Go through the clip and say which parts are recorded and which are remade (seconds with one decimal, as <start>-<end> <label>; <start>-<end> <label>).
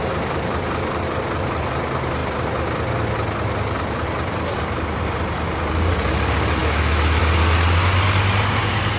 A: 0.0-6.6 recorded; 6.6-7.2 remade; 7.2-9.0 recorded